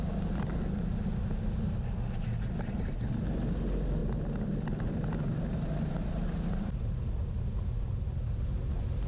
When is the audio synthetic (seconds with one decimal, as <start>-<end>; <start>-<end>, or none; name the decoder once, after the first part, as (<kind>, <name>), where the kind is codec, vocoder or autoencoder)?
none